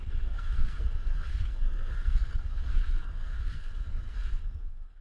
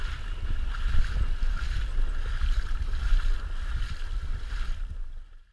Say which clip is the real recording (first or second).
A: second